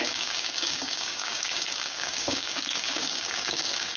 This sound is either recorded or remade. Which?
remade